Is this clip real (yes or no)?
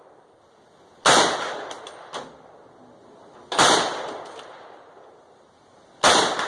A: yes